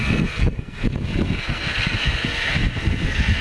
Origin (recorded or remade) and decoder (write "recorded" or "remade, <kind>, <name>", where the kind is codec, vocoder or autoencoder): remade, codec, SNAC